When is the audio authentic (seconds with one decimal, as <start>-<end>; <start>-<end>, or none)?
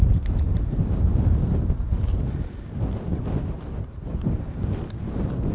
0.0-5.5